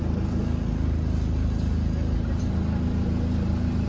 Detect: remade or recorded recorded